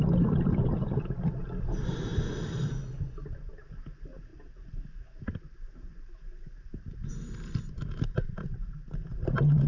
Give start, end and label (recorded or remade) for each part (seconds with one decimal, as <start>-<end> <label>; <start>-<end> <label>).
0.0-9.7 recorded